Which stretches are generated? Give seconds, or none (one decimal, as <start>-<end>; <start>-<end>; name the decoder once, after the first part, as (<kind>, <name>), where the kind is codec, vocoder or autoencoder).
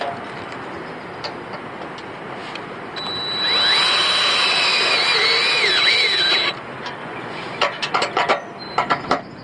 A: 7.0-8.3 (vocoder, Vocos)